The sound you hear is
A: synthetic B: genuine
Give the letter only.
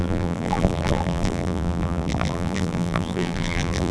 A